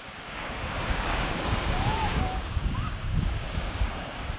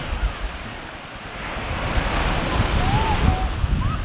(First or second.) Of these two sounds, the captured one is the second